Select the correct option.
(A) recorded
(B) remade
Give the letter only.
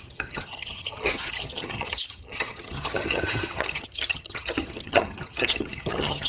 B